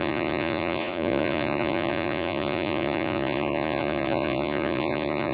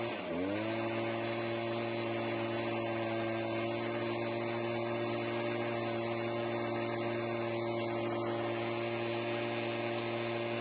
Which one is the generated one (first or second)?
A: first